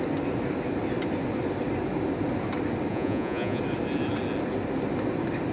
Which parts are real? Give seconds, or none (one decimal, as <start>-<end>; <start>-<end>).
0.0-2.9; 3.6-5.5